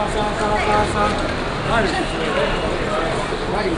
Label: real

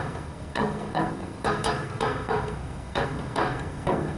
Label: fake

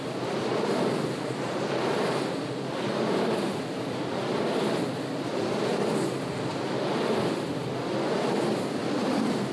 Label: fake